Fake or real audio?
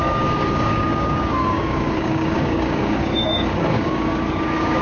fake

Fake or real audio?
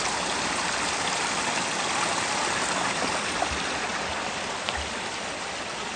real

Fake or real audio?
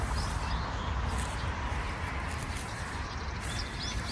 real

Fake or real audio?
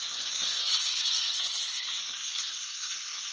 fake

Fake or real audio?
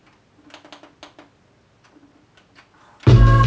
real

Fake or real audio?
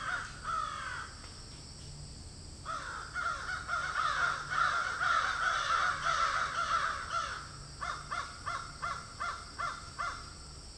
real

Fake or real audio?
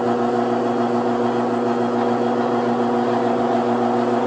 real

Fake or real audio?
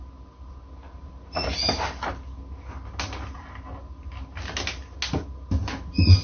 real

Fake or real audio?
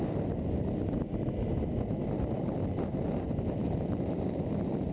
real